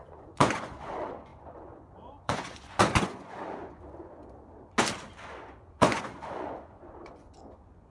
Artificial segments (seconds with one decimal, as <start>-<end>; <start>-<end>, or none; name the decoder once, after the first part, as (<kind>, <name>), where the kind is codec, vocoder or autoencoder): 0.0-4.2 (vocoder, Vocos); 5.2-7.9